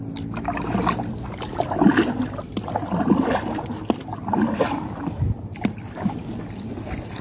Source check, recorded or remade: recorded